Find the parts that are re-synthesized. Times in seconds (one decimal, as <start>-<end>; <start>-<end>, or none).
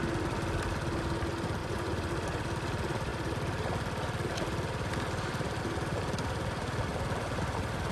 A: 1.6-2.1